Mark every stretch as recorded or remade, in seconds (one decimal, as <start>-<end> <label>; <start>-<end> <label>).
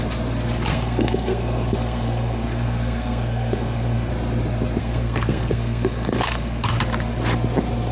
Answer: 0.0-0.7 recorded; 0.7-4.1 remade; 4.1-4.8 recorded; 4.8-6.8 remade; 6.8-7.9 recorded